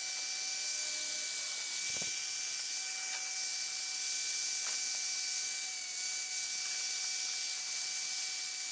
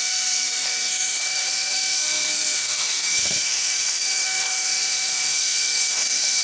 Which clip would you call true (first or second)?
first